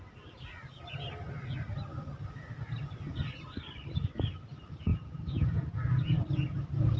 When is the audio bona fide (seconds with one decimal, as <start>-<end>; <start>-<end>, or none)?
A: 0.0-4.9; 6.2-7.0